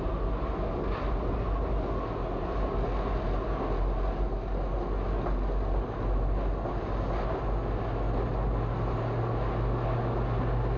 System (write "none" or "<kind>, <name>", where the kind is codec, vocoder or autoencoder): none